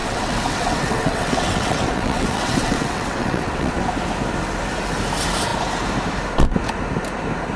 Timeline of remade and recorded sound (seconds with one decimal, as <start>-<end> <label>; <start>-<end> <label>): 0.0-3.8 remade; 3.8-7.6 recorded